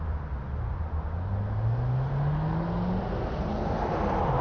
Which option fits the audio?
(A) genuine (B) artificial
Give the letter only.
A